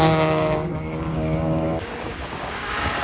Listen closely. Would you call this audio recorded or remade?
remade